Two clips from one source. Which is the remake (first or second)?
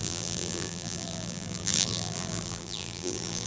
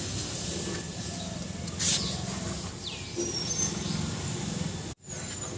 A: first